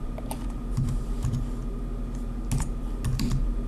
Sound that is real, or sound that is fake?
real